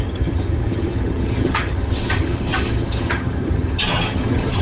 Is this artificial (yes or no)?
yes